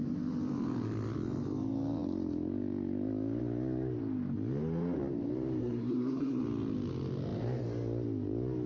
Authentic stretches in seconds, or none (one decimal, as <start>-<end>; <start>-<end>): 0.0-5.6; 6.4-8.7